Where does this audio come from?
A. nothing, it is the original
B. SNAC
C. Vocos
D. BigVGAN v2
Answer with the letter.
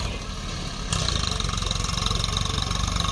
A